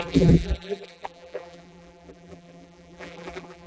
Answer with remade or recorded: remade